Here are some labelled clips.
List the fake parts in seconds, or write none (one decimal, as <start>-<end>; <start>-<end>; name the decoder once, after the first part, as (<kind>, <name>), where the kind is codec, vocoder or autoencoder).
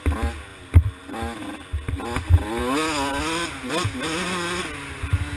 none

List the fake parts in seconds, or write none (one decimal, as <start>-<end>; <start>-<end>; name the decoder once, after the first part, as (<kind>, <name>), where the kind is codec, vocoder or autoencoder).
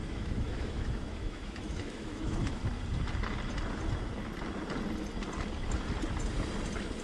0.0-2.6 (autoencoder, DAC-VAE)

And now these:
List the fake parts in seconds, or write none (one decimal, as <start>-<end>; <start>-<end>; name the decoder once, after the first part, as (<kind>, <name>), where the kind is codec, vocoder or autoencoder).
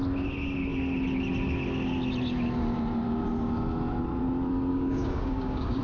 4.7-5.8 (codec, DAC)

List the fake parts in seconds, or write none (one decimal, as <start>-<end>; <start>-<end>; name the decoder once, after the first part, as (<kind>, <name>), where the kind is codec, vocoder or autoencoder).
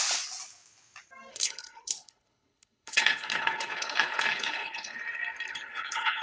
1.3-5.0 (codec, HILCodec); 5.5-6.2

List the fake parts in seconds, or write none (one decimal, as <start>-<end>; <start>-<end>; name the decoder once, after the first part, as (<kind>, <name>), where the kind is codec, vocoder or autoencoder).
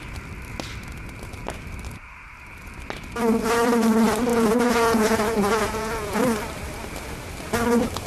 4.3-6.2 (vocoder, Vocos)